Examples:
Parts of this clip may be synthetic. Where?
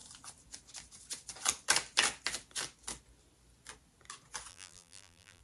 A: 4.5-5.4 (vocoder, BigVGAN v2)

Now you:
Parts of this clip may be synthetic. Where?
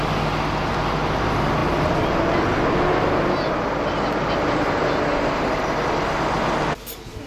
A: none